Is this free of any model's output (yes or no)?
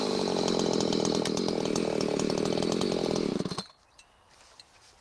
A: yes